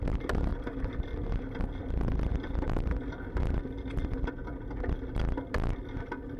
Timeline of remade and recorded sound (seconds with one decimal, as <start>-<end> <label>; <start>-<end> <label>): 0.0-6.4 recorded